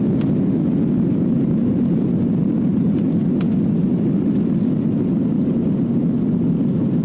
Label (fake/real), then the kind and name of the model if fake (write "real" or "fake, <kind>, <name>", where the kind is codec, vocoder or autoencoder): real